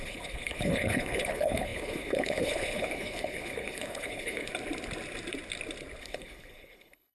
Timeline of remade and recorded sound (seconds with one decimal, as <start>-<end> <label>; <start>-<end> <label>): 0.0-4.5 remade; 4.5-6.0 recorded; 6.0-7.1 remade